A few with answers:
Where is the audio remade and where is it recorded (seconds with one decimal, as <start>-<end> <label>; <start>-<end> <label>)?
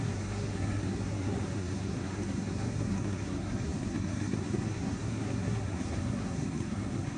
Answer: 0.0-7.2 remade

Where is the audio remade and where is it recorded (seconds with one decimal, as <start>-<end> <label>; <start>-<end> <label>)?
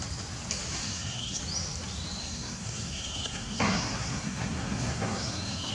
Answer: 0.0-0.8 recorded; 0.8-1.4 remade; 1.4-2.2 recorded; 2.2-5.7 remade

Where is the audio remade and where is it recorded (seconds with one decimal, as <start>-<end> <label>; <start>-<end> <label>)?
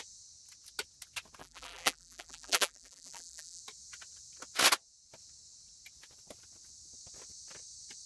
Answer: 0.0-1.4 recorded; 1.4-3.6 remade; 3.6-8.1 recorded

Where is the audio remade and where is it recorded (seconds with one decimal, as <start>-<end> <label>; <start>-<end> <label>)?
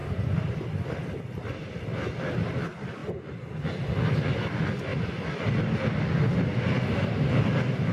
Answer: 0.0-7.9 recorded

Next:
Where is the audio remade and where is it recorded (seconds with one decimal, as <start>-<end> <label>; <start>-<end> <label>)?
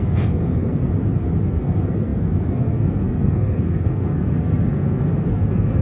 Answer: 0.0-0.9 remade; 0.9-1.5 recorded; 1.5-5.8 remade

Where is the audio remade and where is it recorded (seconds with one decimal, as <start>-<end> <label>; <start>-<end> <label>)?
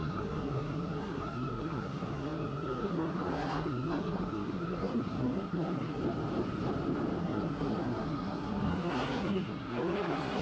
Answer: 0.0-6.0 remade; 6.0-7.2 recorded; 7.2-10.4 remade